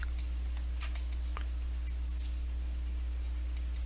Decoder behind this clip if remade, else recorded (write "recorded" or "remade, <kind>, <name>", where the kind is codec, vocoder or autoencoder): recorded